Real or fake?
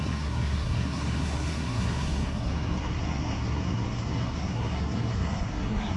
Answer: fake